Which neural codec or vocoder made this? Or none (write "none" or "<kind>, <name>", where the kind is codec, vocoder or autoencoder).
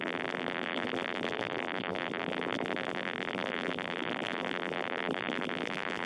vocoder, BigVGAN v2